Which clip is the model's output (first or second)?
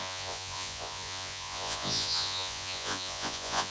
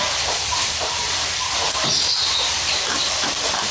first